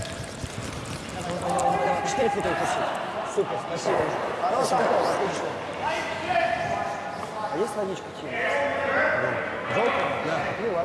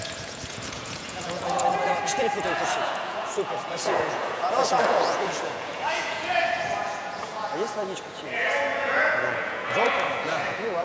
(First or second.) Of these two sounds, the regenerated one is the second